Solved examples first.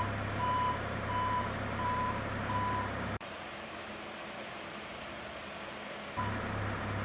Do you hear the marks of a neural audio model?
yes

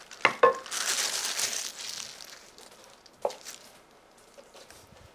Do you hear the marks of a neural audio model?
no